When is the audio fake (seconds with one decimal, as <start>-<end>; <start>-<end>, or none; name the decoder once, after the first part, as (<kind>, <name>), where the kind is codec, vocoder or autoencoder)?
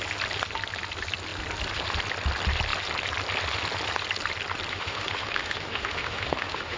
4.7-6.8 (autoencoder, DAC-VAE)